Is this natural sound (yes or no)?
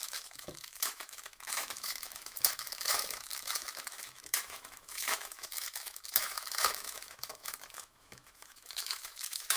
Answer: no